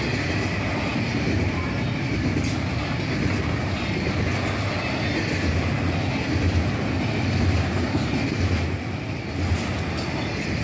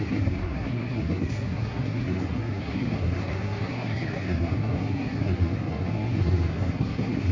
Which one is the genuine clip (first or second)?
first